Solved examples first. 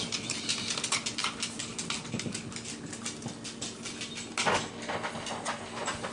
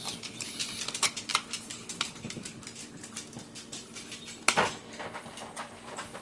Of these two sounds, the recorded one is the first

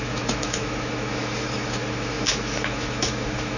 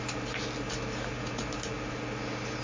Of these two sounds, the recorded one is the second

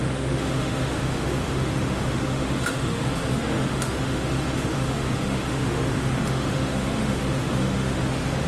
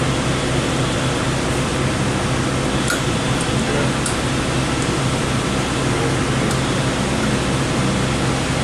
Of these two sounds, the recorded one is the second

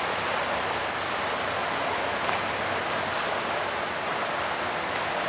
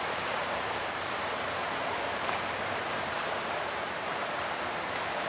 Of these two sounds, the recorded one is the first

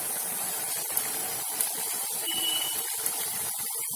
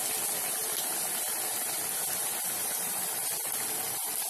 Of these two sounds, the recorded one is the second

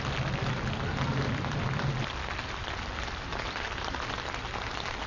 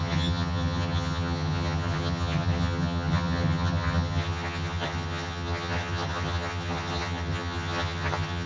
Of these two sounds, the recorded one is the first